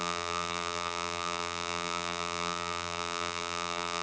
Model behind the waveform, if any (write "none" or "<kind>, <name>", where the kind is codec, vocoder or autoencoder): vocoder, BigVGAN v2